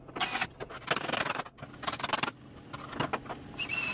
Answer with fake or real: real